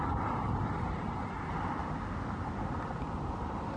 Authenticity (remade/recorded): recorded